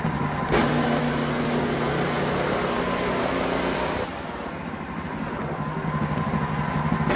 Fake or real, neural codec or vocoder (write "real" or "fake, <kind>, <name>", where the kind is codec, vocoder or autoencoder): real